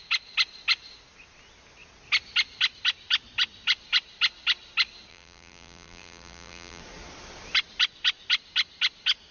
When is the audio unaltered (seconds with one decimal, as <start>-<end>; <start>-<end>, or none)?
0.0-5.1; 6.8-9.3